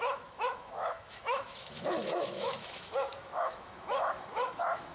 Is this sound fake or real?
fake